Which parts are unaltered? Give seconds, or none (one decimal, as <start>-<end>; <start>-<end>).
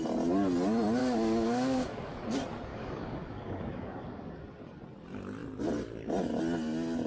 0.0-1.0; 2.2-2.7; 4.4-7.1